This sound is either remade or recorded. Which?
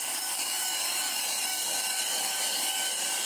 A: remade